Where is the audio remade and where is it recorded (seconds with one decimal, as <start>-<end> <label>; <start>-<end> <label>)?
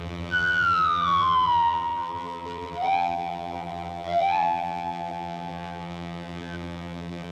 0.0-7.3 remade